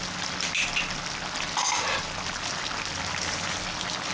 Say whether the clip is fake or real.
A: real